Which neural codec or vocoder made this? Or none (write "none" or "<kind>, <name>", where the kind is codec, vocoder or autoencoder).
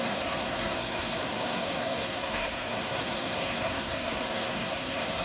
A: codec, SNAC